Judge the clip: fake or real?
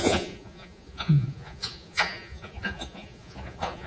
fake